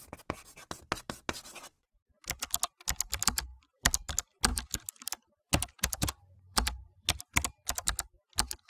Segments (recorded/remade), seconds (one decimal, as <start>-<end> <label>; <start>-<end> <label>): 0.0-3.5 recorded; 3.5-4.1 remade; 4.1-4.5 recorded; 4.5-7.2 remade; 7.2-8.7 recorded